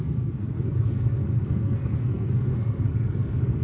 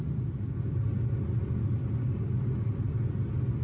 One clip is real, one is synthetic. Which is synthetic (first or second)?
first